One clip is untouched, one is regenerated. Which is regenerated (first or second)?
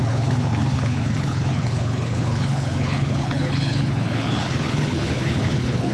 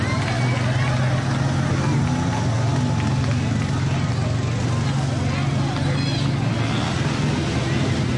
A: first